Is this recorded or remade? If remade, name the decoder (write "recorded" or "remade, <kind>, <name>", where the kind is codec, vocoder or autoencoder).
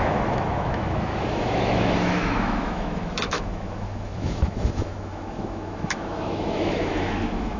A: remade, autoencoder, DAC-VAE